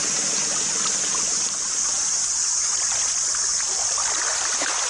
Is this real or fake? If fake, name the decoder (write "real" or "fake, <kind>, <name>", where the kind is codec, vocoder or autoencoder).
real